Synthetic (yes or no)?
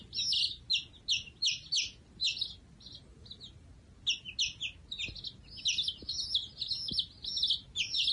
no